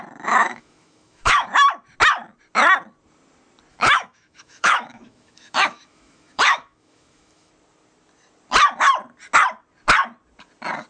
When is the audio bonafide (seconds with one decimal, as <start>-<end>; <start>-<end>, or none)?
0.0-0.4; 1.5-3.7; 7.5-10.9